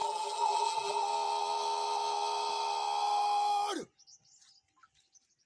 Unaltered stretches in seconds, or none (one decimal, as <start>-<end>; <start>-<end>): 1.0-5.5